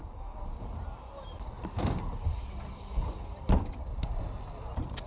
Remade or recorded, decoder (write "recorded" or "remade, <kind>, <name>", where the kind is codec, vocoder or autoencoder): recorded